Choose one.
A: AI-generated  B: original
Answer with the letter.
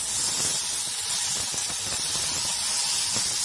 B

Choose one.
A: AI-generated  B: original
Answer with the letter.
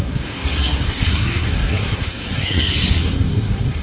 A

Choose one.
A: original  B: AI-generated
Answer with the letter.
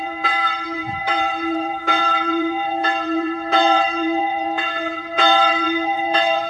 B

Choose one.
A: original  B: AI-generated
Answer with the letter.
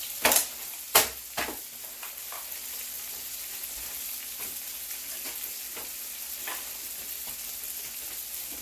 A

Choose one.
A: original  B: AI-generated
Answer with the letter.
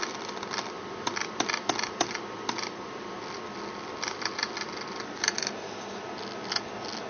A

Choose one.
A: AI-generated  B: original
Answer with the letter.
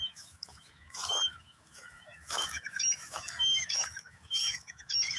A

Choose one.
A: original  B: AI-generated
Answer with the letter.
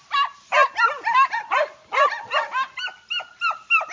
A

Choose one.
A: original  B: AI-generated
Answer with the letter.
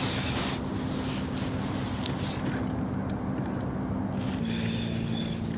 A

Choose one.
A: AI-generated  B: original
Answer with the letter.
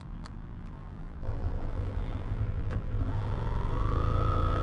A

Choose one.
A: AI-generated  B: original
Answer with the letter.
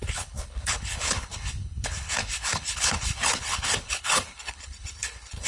A